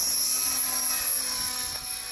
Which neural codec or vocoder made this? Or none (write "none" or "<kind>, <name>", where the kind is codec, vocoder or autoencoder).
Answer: none